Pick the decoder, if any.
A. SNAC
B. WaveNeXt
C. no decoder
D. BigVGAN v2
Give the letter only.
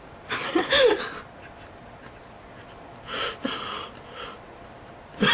C